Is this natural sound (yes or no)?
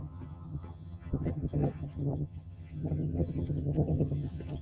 no